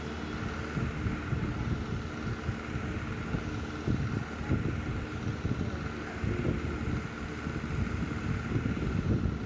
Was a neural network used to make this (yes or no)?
no